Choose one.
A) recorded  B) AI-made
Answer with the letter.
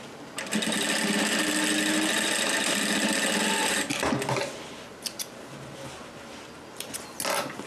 A